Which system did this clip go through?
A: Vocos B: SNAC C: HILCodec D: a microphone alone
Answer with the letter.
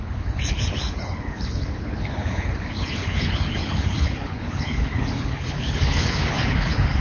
C